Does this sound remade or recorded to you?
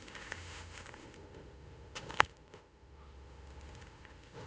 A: remade